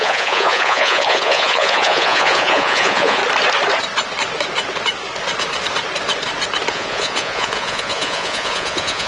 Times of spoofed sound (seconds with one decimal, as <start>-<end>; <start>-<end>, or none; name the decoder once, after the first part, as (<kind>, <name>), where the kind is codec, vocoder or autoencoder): 0.0-3.2 (vocoder, Vocos); 6.7-9.1